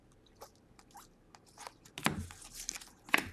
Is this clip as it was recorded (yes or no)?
yes